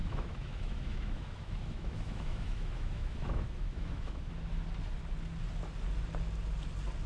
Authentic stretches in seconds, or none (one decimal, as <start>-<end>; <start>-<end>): 4.3-7.1